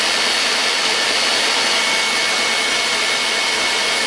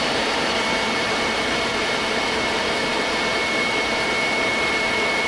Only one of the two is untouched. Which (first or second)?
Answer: first